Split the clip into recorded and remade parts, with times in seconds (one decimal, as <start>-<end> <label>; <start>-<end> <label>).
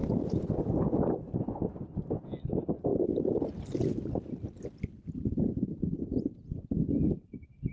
0.0-1.6 remade; 1.6-2.9 recorded; 2.9-6.0 remade; 6.0-7.7 recorded